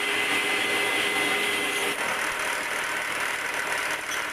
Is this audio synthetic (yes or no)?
no